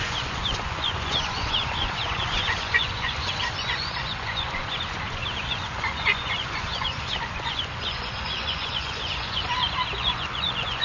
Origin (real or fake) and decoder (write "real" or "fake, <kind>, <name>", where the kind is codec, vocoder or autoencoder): fake, vocoder, Vocos